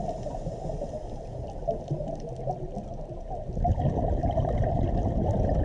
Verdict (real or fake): real